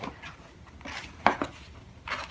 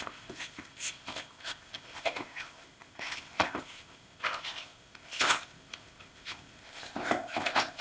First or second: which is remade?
second